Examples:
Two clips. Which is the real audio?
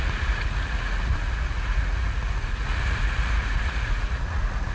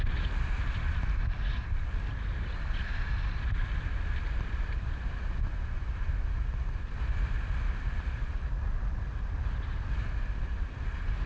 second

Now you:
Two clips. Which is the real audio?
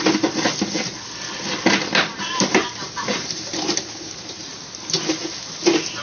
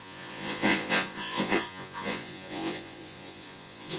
first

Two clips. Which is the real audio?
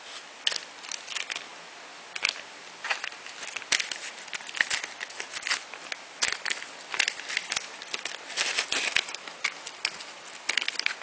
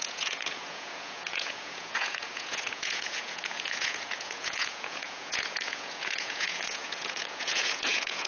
first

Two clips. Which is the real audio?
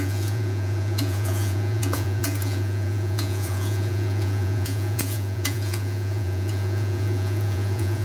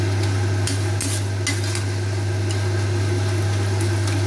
second